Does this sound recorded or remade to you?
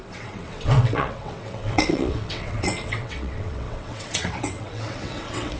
remade